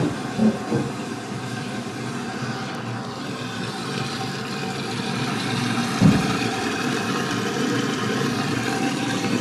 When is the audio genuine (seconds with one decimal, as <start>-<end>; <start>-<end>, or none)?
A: 0.4-1.2; 2.3-6.2